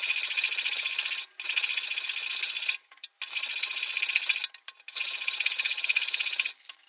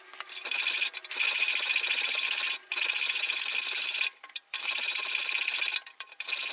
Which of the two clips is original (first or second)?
first